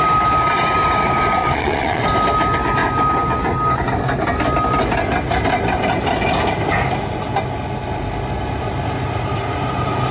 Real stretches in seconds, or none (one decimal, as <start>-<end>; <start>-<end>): 0.0-1.4; 2.0-10.1